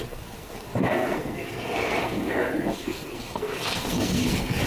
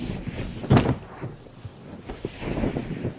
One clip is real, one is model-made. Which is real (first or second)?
second